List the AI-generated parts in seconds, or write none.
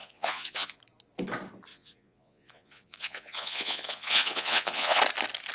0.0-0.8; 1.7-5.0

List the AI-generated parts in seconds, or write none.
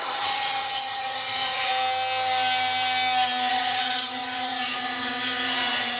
0.0-1.7; 3.5-6.0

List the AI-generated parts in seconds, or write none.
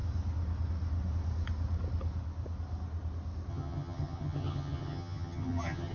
3.5-5.9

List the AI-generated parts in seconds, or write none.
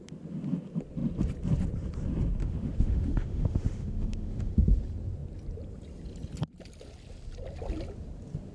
2.4-4.5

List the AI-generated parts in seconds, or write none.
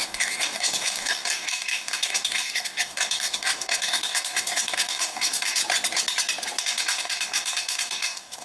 0.0-5.6; 6.6-8.4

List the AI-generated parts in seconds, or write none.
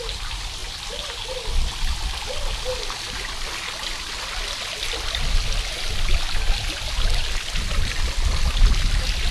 none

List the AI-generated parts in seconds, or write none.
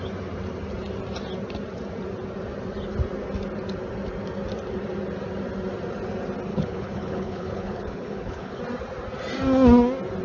6.5-8.6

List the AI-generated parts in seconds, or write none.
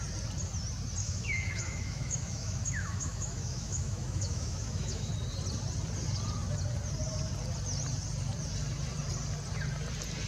1.0-5.1